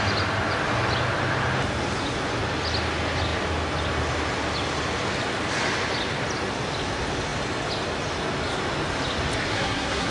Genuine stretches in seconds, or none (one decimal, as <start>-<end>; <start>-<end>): 0.0-9.5